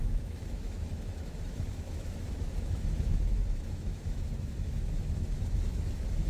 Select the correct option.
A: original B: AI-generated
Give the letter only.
B